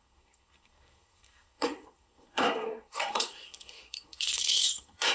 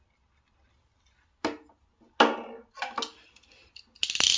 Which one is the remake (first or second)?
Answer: first